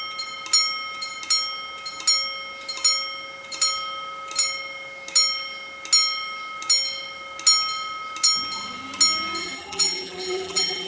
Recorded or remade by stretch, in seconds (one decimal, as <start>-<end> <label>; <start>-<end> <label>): 0.0-9.4 recorded; 9.4-10.9 remade